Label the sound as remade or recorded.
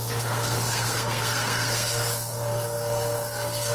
remade